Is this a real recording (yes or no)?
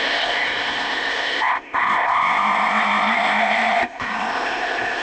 no